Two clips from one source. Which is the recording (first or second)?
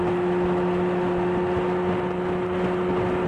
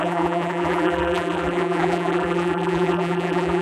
first